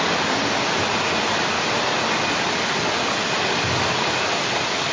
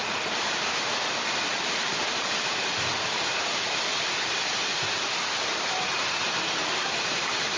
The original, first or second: first